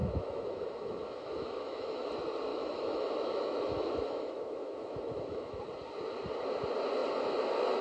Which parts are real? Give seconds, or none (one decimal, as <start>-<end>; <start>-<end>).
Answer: 2.1-2.5; 5.6-7.8